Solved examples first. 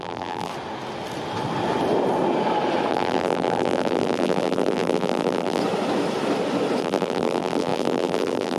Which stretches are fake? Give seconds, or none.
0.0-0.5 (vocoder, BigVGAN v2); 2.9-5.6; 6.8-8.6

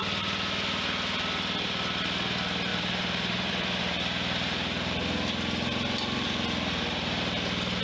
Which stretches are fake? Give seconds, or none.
2.7-3.8 (vocoder, BigVGAN v2)